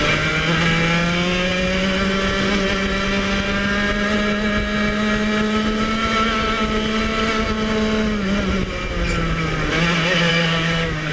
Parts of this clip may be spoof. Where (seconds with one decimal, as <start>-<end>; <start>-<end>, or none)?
10.3-11.1